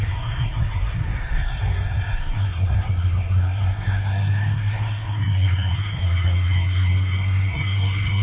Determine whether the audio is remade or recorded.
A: remade